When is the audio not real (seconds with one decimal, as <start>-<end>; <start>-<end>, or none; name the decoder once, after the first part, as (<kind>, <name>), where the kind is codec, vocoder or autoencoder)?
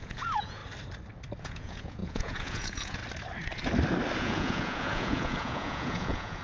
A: 0.0-0.6 (vocoder, Vocos); 1.4-3.0; 4.2-6.4